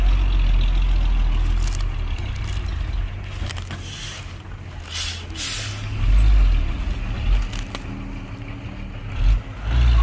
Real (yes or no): yes